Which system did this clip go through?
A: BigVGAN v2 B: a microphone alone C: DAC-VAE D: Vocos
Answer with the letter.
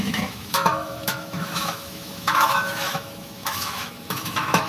C